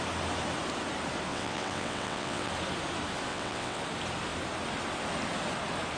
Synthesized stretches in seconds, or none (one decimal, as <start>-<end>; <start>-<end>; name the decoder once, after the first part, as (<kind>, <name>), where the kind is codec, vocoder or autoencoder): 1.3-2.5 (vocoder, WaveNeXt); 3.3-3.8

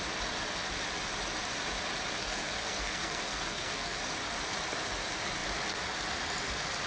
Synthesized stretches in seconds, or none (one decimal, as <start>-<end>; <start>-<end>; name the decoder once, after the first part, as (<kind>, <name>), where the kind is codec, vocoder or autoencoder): 2.2-4.0 (codec, SNAC)

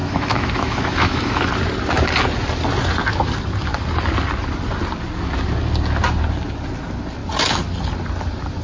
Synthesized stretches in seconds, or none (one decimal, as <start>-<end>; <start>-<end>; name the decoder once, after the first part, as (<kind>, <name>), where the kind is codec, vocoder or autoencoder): 0.0-1.5 (autoencoder, DAC-VAE)